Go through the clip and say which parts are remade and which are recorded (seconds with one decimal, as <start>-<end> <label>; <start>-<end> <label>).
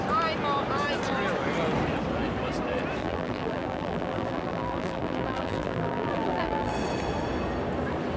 0.0-3.0 recorded; 3.0-6.7 remade; 6.7-8.2 recorded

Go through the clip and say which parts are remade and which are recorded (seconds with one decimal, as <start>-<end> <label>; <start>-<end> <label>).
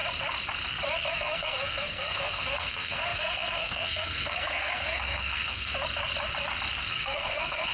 0.0-1.1 recorded; 1.1-5.7 remade; 5.7-6.9 recorded; 6.9-7.7 remade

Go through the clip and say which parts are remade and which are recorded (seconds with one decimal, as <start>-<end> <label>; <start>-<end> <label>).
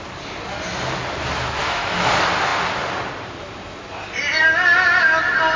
0.0-1.6 recorded; 1.6-2.1 remade; 2.1-5.6 recorded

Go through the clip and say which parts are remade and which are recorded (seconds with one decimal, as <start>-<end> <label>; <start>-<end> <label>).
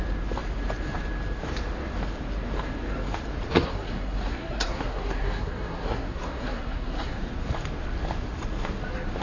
0.0-3.5 recorded; 3.5-7.2 remade; 7.2-9.2 recorded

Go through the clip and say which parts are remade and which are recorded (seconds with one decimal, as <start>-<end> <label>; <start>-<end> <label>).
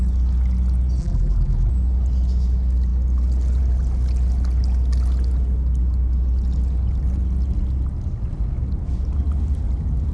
0.0-1.0 recorded; 1.0-1.7 remade; 1.7-10.1 recorded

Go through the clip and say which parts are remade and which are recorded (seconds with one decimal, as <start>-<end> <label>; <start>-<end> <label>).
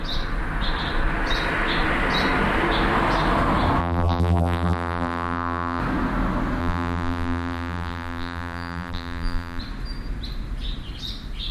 0.0-3.8 recorded; 3.8-5.8 remade; 5.8-6.6 recorded; 6.6-9.6 remade; 9.6-11.5 recorded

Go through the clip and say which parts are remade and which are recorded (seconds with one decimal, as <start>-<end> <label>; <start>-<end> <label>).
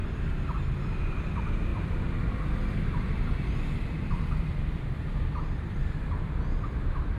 0.0-1.0 recorded; 1.0-7.2 remade